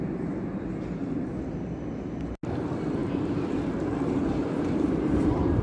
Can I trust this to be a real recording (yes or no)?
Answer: yes